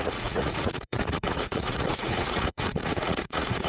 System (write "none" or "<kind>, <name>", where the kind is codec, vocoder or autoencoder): vocoder, Vocos